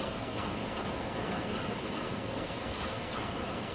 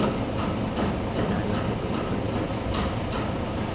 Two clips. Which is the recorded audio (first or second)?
second